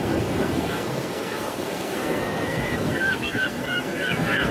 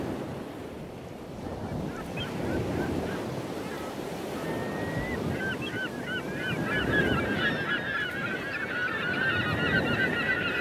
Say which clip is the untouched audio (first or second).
second